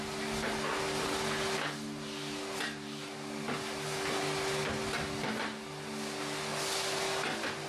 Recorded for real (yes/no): yes